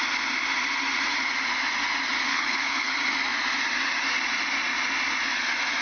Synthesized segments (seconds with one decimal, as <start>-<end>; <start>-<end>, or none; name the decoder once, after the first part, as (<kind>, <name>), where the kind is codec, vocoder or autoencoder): 2.3-2.9 (codec, HILCodec)